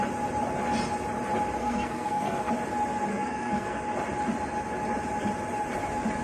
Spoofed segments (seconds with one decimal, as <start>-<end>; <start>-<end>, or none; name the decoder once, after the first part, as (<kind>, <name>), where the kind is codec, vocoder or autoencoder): 1.6-2.5 (codec, SNAC); 3.1-3.8